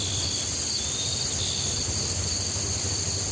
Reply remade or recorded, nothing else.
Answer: recorded